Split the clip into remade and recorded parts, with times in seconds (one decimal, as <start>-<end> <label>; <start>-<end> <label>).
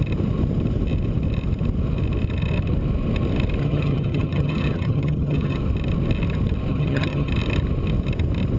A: 0.0-3.6 recorded; 3.6-5.6 remade; 5.6-6.7 recorded; 6.7-7.3 remade; 7.3-8.6 recorded